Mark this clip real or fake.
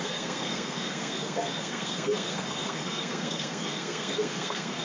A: fake